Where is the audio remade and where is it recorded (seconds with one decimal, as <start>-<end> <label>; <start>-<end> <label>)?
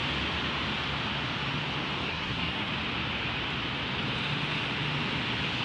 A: 0.0-2.1 recorded; 2.1-2.7 remade; 2.7-5.6 recorded